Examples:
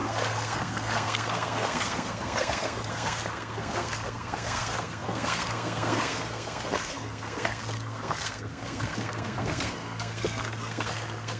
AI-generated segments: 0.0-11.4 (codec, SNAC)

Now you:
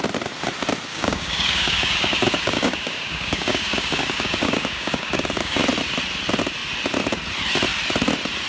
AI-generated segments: 0.9-5.6 (codec, DAC)

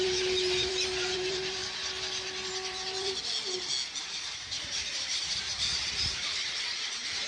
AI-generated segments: 0.0-1.6 (vocoder, BigVGAN v2); 2.5-3.2; 4.0-7.3